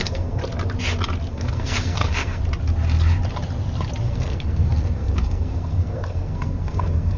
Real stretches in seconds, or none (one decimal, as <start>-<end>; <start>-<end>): 0.4-1.3; 2.4-4.0